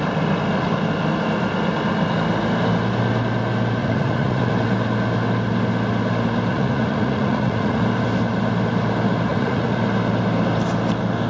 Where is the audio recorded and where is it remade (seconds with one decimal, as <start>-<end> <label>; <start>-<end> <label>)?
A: 0.0-3.8 recorded; 3.8-4.5 remade; 4.5-6.5 recorded; 6.5-7.8 remade; 7.8-9.3 recorded; 9.3-9.8 remade; 9.8-11.3 recorded